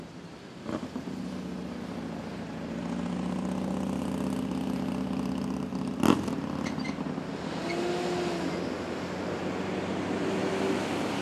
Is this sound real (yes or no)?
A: yes